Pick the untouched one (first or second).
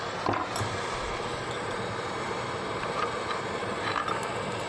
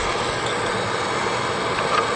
second